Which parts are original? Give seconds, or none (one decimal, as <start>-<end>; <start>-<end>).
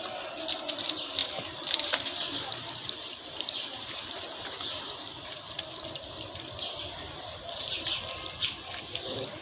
0.0-1.2; 5.6-9.4